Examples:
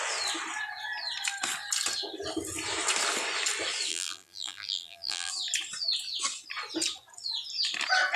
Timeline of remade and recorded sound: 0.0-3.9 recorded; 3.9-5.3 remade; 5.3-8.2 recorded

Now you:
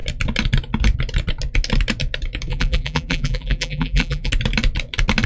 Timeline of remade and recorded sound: 0.0-2.5 recorded; 2.5-4.3 remade; 4.3-5.3 recorded

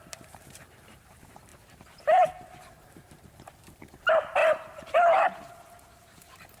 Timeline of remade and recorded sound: 0.0-6.6 remade